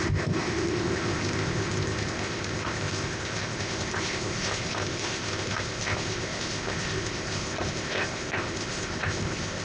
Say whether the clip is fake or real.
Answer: fake